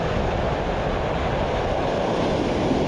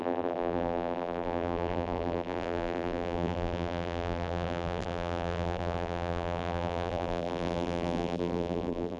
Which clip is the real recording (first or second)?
first